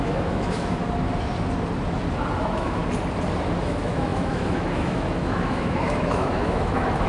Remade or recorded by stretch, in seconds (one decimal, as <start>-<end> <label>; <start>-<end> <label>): 0.0-0.8 remade; 0.8-2.4 recorded; 2.4-2.8 remade; 2.8-3.6 recorded; 3.6-7.1 remade